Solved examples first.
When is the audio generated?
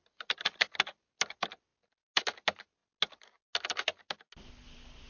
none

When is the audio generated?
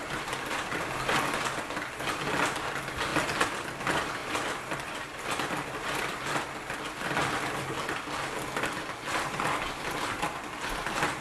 none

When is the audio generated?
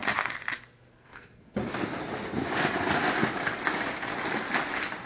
0.9-1.6 (codec, SNAC)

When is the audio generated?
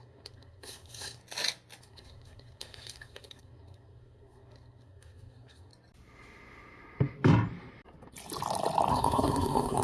0.0-1.2 (codec, SNAC); 1.8-5.7; 8.9-9.8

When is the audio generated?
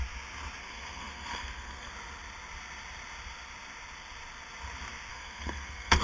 0.6-1.9 (codec, SNAC); 5.1-6.0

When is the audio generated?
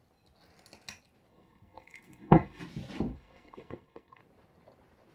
1.3-2.6 (codec, SNAC); 3.1-4.2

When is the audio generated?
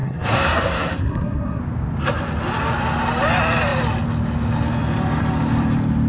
0.0-1.6 (codec, SNAC)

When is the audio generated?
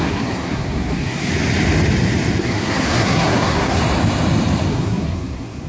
0.0-1.3 (codec, SNAC); 2.4-3.8; 4.7-5.7